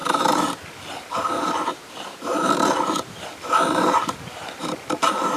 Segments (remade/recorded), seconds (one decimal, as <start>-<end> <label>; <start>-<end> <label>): 0.0-5.4 remade